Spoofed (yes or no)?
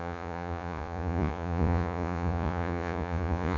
yes